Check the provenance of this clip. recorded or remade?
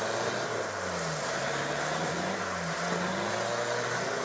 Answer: recorded